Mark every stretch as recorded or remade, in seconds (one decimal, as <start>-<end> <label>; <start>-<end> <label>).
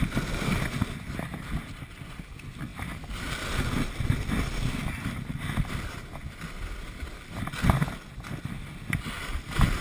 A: 0.0-9.8 recorded